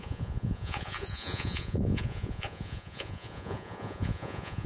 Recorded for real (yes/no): no